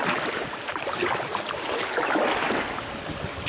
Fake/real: real